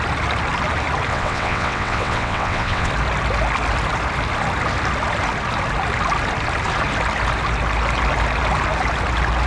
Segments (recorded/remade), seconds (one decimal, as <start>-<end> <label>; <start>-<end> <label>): 0.0-1.1 recorded; 1.1-2.9 remade; 2.9-9.5 recorded